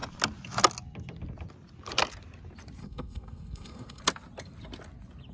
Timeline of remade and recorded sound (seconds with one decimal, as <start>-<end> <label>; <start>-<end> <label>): 0.0-2.8 recorded; 2.8-4.0 remade; 4.0-5.3 recorded